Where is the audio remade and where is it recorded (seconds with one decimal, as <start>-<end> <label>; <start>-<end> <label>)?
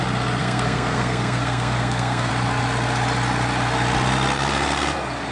0.0-0.4 recorded; 0.4-2.3 remade; 2.3-5.3 recorded